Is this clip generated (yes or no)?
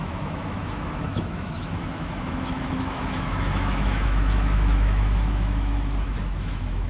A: yes